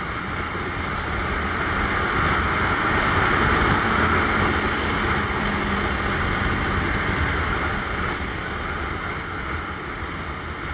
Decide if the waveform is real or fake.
real